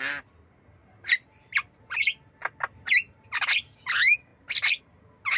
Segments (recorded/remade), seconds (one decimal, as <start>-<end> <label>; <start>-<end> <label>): 0.0-0.8 recorded; 0.8-1.5 remade; 1.5-5.4 recorded